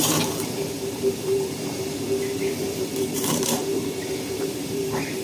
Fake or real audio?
fake